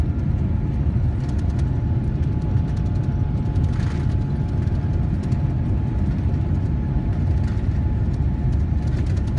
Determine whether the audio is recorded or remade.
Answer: recorded